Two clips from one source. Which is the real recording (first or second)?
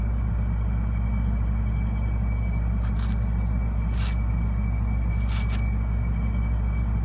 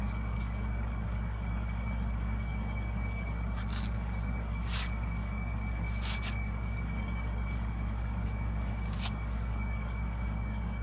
first